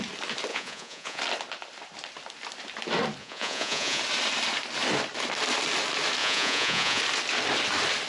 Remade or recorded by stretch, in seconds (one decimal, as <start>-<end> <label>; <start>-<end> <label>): 0.0-0.5 recorded; 0.5-1.2 remade; 1.2-3.2 recorded; 3.2-4.0 remade; 4.0-6.2 recorded; 6.2-7.0 remade; 7.0-8.1 recorded